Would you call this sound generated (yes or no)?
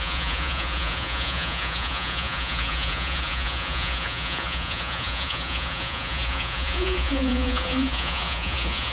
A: yes